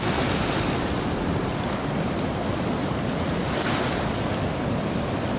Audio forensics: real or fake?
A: real